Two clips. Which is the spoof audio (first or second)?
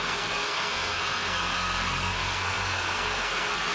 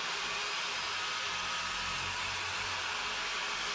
first